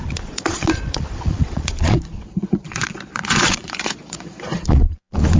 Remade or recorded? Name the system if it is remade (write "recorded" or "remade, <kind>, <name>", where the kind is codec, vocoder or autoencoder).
remade, vocoder, Vocos